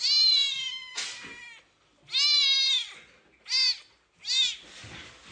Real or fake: real